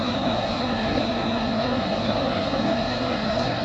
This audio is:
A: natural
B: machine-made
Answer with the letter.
B